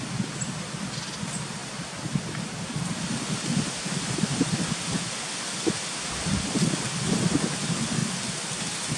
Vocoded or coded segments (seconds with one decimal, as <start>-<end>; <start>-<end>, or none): 8.0-8.6